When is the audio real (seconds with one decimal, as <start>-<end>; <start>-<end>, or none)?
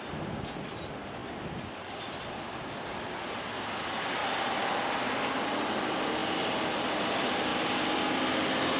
0.0-8.8